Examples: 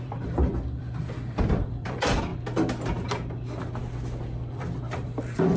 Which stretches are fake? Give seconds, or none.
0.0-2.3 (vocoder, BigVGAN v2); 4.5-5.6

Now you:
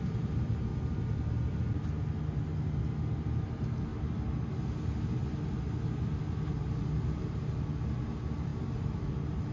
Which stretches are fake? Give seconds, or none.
0.0-0.7 (vocoder, BigVGAN v2); 3.5-3.9; 4.6-9.5

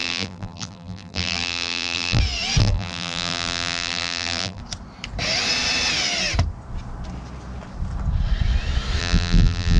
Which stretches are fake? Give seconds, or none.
0.0-2.2 (vocoder, BigVGAN v2); 2.6-4.6; 9.0-9.8

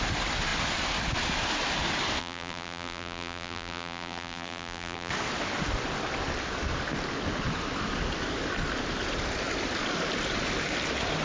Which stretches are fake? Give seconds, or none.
2.2-5.1 (vocoder, BigVGAN v2)

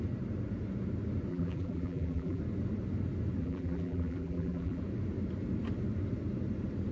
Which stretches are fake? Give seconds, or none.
1.3-2.4 (vocoder, BigVGAN v2); 3.4-4.8

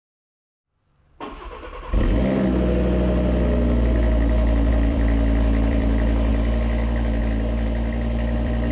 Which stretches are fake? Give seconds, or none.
0.0-0.6 (vocoder, BigVGAN v2); 4.7-6.3; 7.2-8.7

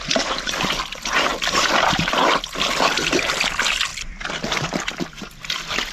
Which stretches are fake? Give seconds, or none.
1.3-2.1 (vocoder, BigVGAN v2); 3.9-5.2

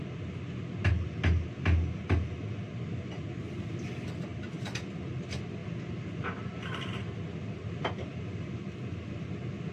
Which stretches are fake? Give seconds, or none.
5.6-7.0 (vocoder, BigVGAN v2)